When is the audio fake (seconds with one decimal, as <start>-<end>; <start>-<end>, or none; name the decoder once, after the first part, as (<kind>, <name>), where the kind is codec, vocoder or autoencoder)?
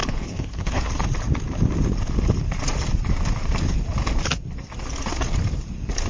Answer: 0.0-0.9 (codec, HILCodec)